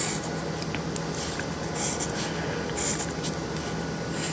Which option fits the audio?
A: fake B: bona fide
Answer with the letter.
B